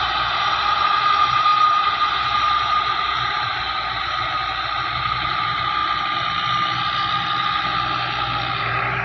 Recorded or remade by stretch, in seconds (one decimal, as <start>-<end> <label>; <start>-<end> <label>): 0.0-5.8 remade; 5.8-8.6 recorded; 8.6-9.0 remade